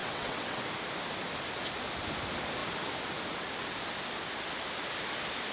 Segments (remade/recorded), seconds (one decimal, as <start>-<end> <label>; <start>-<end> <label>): 0.0-0.6 remade; 0.6-5.5 recorded